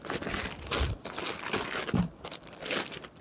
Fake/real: real